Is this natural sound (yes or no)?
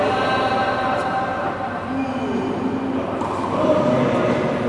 yes